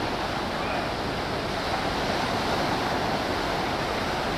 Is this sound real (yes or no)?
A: yes